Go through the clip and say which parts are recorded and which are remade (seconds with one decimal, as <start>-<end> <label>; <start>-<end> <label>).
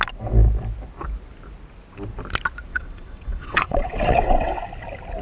0.0-2.7 recorded; 2.7-4.6 remade; 4.6-5.2 recorded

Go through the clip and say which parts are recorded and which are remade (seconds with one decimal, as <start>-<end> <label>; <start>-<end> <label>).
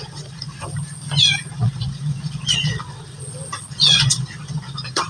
0.0-0.6 remade; 0.6-1.5 recorded; 1.5-3.2 remade; 3.2-3.7 recorded; 3.7-5.1 remade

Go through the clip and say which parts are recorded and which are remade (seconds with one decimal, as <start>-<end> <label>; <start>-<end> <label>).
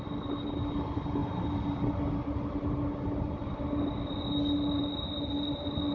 0.0-5.9 recorded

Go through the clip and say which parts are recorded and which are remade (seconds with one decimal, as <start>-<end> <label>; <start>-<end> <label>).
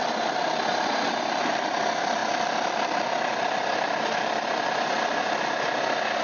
0.0-6.2 recorded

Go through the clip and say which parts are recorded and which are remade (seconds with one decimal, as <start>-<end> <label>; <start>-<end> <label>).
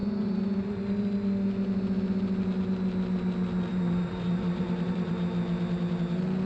0.0-0.8 remade; 0.8-3.7 recorded; 3.7-5.1 remade; 5.1-6.5 recorded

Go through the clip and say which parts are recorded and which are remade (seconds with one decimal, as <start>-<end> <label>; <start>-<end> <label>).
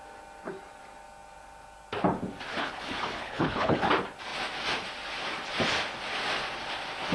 0.0-2.5 recorded; 2.5-3.9 remade; 3.9-7.1 recorded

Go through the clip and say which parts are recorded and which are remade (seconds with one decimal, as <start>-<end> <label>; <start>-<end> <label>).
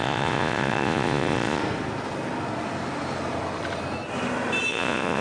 0.0-1.6 remade; 1.6-4.7 recorded; 4.7-5.2 remade